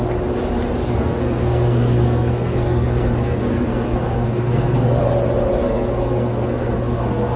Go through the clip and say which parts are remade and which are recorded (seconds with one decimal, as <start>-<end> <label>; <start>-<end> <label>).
0.0-0.8 recorded; 0.8-5.0 remade; 5.0-5.5 recorded; 5.5-7.4 remade